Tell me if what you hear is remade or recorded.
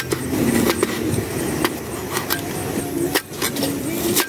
recorded